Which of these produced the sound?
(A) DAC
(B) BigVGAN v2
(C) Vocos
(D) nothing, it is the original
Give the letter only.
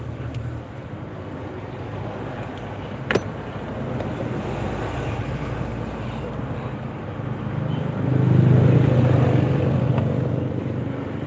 D